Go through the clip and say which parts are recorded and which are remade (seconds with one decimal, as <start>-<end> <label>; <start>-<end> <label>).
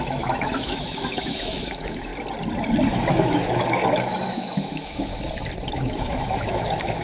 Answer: 0.0-2.1 remade; 2.1-2.9 recorded; 2.9-5.1 remade; 5.1-5.7 recorded; 5.7-7.0 remade